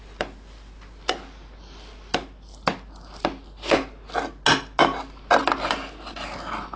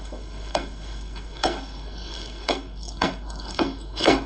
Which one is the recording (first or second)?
first